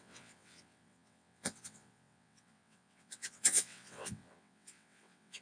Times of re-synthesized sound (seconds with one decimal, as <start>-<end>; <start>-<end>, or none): 0.0-5.4